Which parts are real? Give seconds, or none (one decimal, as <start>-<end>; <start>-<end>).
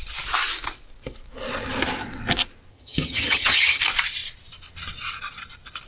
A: 0.0-2.7; 3.8-5.9